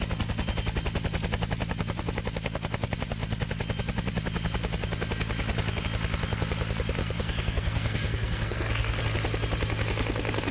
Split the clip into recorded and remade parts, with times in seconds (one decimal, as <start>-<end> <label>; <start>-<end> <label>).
0.0-7.0 recorded; 7.0-9.0 remade; 9.0-10.5 recorded